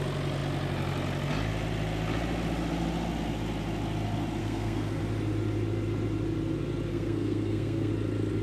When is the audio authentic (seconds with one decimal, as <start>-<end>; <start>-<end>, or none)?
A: 0.0-4.4; 5.0-6.9; 7.9-8.4